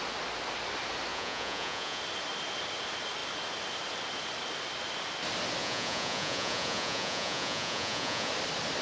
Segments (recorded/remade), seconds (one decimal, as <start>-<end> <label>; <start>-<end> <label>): 0.0-1.1 recorded; 1.1-2.0 remade; 2.0-5.6 recorded; 5.6-8.3 remade; 8.3-8.8 recorded